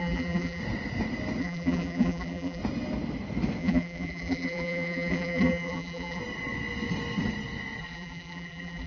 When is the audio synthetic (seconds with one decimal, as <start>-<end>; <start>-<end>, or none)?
0.0-0.6; 1.4-2.6; 3.6-6.2; 7.8-8.9